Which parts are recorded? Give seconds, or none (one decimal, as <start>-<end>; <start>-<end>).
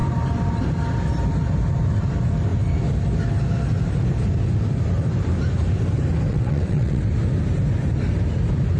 0.0-6.3; 7.0-8.8